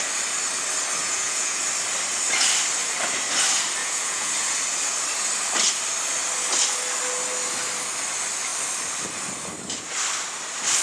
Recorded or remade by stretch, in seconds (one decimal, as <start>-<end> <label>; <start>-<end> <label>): 0.0-1.0 recorded; 1.0-1.6 remade; 1.6-3.8 recorded; 3.8-4.3 remade; 4.3-10.8 recorded